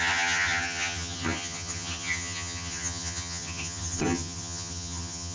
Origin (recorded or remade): remade